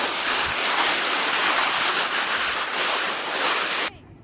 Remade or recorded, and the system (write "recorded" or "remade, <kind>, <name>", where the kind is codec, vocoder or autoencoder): remade, vocoder, BigVGAN v2